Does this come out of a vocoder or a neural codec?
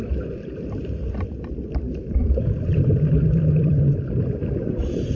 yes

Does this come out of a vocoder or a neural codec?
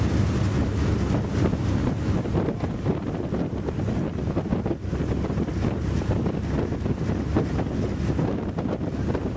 no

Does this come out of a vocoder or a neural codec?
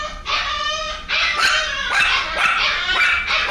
no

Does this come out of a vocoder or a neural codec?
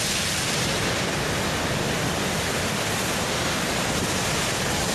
no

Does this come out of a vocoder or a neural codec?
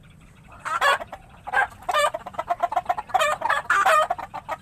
no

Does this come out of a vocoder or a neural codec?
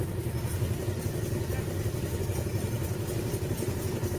no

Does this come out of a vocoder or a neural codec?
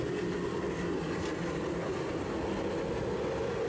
no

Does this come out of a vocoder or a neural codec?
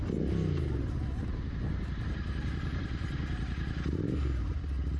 no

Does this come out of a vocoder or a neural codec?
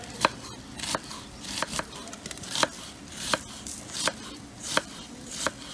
yes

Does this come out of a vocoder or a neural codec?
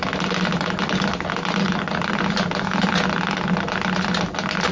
no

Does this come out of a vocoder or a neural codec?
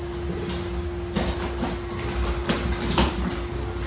no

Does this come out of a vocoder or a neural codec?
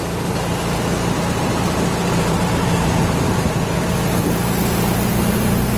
yes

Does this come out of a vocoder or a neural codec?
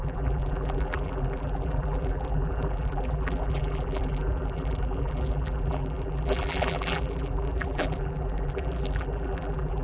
yes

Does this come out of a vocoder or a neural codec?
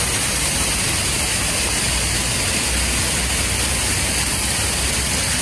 no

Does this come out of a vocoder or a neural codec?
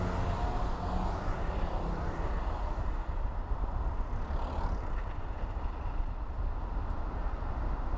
no